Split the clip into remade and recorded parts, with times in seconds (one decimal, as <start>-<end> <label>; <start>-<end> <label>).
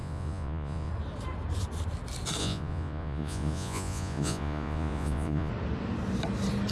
0.0-0.9 remade; 0.9-2.4 recorded; 2.4-5.5 remade; 5.5-6.7 recorded